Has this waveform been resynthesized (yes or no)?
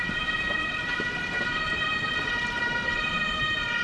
yes